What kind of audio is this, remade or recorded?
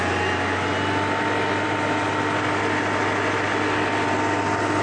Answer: recorded